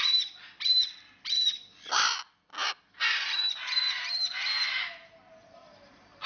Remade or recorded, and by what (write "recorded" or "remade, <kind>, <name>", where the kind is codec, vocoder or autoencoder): recorded